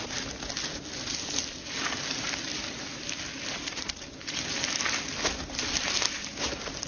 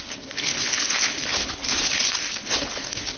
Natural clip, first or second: first